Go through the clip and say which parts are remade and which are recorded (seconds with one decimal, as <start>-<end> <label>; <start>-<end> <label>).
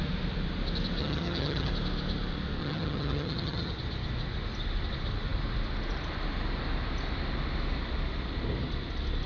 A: 0.0-1.0 recorded; 1.0-1.7 remade; 1.7-2.6 recorded; 2.6-3.7 remade; 3.7-9.3 recorded